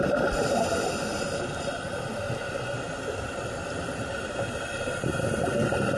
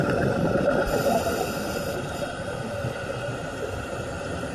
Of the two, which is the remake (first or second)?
second